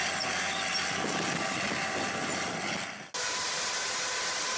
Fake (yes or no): no